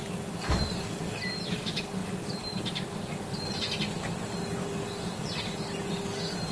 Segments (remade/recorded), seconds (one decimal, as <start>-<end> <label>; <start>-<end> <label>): 0.0-6.5 recorded